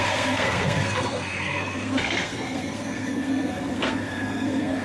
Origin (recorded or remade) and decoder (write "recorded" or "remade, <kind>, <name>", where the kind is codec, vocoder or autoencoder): remade, codec, SNAC